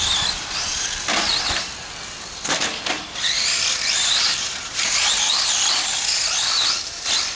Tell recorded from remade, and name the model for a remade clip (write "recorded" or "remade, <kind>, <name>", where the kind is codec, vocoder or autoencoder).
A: remade, vocoder, BigVGAN v2